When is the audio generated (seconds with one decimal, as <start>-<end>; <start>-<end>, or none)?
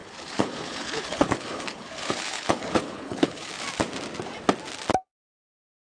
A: 0.0-3.5